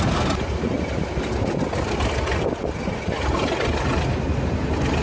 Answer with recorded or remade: recorded